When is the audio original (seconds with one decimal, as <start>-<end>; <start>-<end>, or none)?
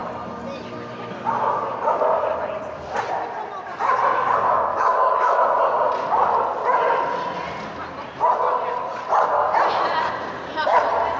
0.0-4.7; 5.4-11.2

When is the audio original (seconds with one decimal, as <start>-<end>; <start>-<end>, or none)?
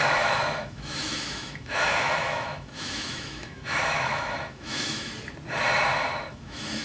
5.1-6.3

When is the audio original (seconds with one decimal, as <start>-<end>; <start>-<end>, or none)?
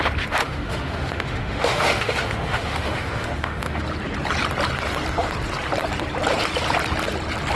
0.0-0.4; 3.8-7.6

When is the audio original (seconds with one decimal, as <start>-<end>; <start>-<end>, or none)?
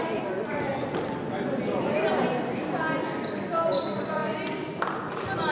0.0-5.5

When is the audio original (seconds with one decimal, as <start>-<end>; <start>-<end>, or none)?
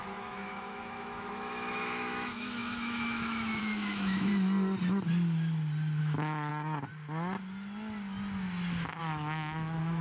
4.3-6.0; 6.5-9.0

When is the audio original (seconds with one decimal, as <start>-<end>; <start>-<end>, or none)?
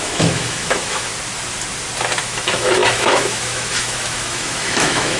1.1-2.2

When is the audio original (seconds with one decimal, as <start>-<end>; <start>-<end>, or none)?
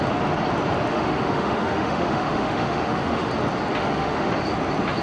0.0-0.9; 3.3-3.8; 4.3-5.0